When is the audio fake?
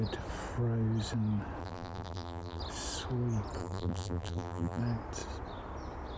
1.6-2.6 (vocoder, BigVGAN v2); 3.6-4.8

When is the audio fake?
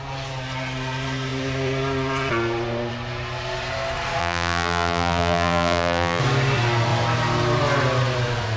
4.2-6.2 (vocoder, BigVGAN v2)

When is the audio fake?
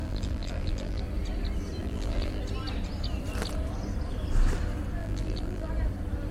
0.0-1.0 (vocoder, BigVGAN v2); 1.8-2.4; 5.0-5.7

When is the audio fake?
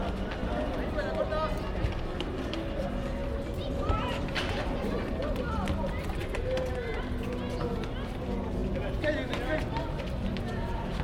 3.2-5.2 (vocoder, BigVGAN v2)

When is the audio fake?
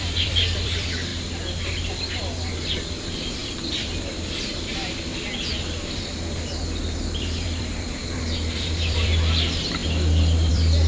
0.0-1.1 (vocoder, BigVGAN v2); 2.9-5.1; 6.8-10.9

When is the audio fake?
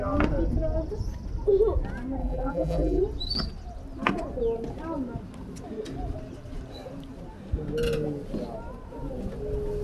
2.2-3.0 (vocoder, BigVGAN v2)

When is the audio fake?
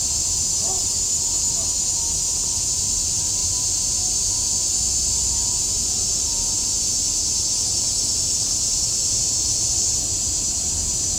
0.0-0.8 (vocoder, BigVGAN v2); 2.8-3.4; 7.7-11.2